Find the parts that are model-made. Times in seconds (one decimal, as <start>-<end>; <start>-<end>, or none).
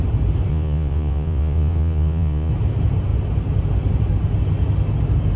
0.5-2.5